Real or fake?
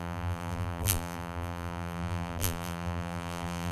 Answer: fake